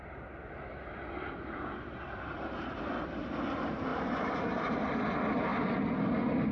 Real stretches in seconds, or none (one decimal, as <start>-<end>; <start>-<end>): 0.0-3.9; 4.4-6.5